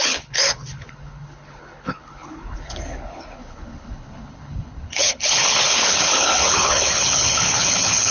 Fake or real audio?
fake